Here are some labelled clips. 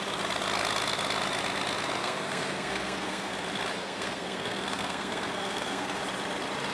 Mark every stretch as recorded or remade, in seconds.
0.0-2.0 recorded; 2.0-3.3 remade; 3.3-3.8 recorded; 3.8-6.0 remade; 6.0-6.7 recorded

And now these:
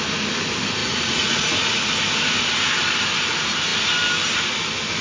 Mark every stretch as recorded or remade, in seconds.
0.0-0.8 recorded; 0.8-1.9 remade; 1.9-5.0 recorded

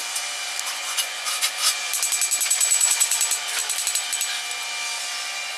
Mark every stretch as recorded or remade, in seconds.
0.0-0.7 recorded; 0.7-1.8 remade; 1.8-2.5 recorded; 2.5-3.2 remade; 3.2-5.6 recorded

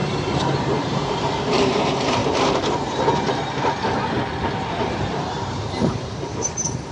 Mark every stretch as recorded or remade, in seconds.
0.0-2.2 remade; 2.2-5.0 recorded; 5.0-6.9 remade

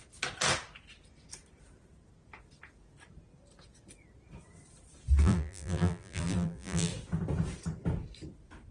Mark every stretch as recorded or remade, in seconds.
0.0-5.2 recorded; 5.2-6.9 remade; 6.9-8.7 recorded

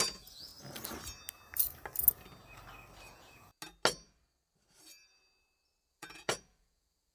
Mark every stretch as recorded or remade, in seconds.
0.0-0.5 remade; 0.5-3.0 recorded; 3.0-3.5 remade; 3.5-5.9 recorded; 5.9-7.1 remade

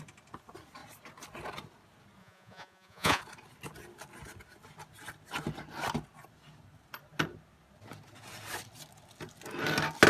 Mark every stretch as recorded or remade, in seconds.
0.0-2.2 recorded; 2.2-3.2 remade; 3.2-10.1 recorded